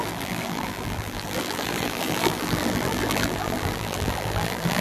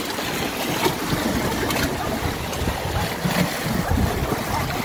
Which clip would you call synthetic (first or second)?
first